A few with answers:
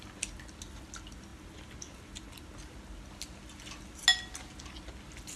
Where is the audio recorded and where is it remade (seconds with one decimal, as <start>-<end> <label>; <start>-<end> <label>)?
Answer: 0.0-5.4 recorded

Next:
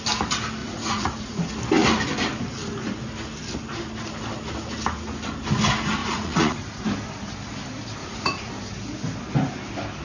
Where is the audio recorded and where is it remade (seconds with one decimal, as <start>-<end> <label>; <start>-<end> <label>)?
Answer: 0.0-0.6 recorded; 0.6-1.5 remade; 1.5-6.0 recorded; 6.0-6.8 remade; 6.8-8.0 recorded; 8.0-8.5 remade; 8.5-10.0 recorded

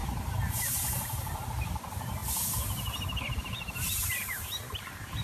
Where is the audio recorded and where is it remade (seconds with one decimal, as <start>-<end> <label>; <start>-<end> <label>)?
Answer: 0.0-2.2 remade; 2.2-3.4 recorded; 3.4-5.2 remade